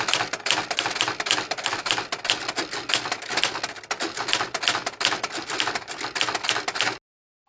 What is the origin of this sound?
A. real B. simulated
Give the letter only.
A